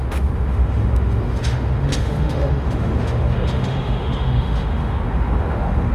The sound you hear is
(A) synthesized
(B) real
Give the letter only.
A